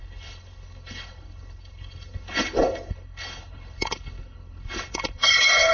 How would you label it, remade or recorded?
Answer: remade